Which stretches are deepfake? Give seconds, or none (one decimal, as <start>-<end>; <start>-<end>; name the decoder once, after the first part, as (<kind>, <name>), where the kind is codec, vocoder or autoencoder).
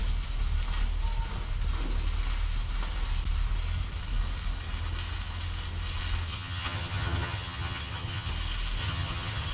6.3-8.3 (vocoder, HiFi-GAN); 8.8-9.5